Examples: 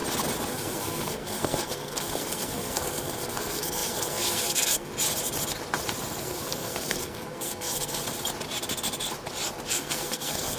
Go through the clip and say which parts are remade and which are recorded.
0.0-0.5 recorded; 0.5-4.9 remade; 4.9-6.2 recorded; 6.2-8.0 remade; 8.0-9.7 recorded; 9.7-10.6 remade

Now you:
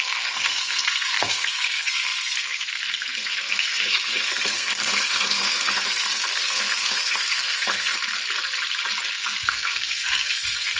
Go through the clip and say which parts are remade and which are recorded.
0.0-7.9 remade; 7.9-9.1 recorded; 9.1-10.8 remade

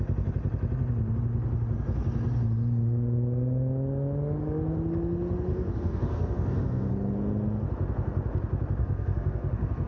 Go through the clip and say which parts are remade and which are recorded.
0.0-5.5 recorded; 5.5-6.9 remade; 6.9-8.8 recorded; 8.8-9.9 remade

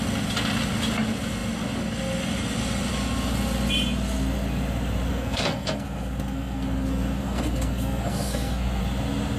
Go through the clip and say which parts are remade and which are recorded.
0.0-5.1 recorded; 5.1-8.8 remade; 8.8-9.4 recorded